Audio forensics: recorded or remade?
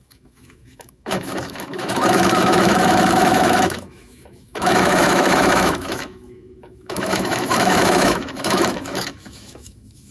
remade